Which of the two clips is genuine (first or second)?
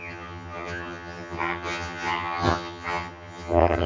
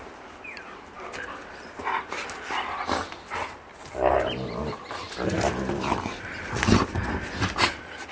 second